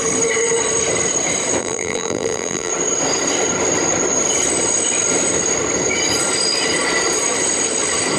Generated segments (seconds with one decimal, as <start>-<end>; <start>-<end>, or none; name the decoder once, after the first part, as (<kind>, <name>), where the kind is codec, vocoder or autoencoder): 1.6-2.7 (vocoder, BigVGAN v2)